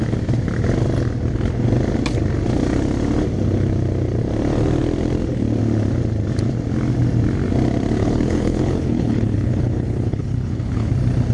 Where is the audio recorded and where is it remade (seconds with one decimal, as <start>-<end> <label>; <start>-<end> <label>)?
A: 0.0-8.0 recorded; 8.0-10.9 remade; 10.9-11.3 recorded